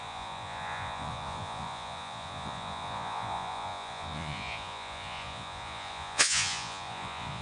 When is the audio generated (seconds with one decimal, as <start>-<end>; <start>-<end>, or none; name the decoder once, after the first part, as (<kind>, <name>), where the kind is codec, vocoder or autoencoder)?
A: 0.0-7.4 (vocoder, Vocos)